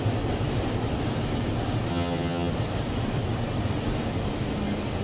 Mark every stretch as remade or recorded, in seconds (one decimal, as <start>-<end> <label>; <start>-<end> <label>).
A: 0.0-1.9 recorded; 1.9-2.5 remade; 2.5-5.0 recorded